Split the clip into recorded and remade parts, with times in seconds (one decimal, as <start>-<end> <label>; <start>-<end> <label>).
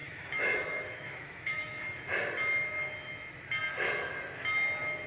0.0-2.0 remade; 2.0-5.1 recorded